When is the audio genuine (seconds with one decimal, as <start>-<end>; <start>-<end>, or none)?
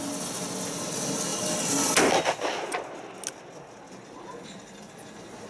0.0-5.5